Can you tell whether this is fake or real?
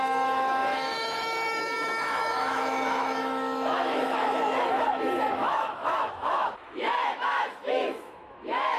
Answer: fake